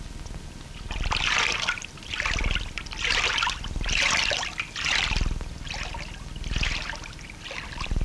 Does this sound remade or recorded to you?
remade